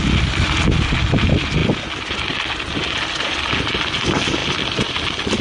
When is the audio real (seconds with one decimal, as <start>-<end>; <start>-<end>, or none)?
0.0-5.4